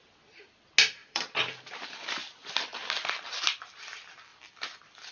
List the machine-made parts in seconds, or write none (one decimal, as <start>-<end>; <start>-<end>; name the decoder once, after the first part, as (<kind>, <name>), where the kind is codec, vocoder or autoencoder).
1.0-1.7 (vocoder, BigVGAN v2); 4.3-5.1